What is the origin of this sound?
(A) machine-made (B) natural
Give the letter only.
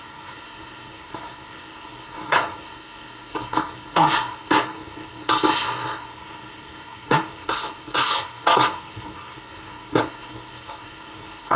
A